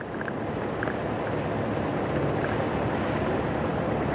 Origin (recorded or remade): recorded